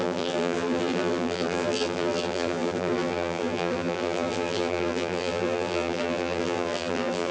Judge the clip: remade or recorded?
remade